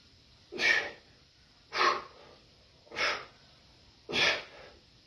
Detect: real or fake fake